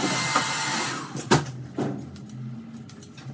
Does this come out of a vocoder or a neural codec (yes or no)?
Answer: no